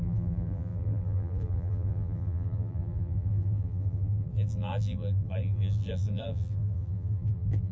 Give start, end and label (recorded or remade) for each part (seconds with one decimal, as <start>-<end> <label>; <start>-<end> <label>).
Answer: 0.0-7.7 remade